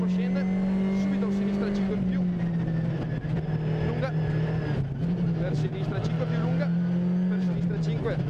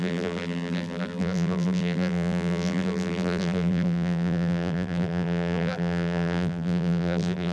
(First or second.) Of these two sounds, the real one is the first